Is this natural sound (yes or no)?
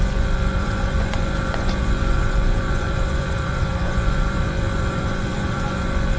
no